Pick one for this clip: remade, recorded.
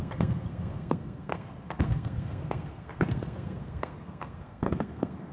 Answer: remade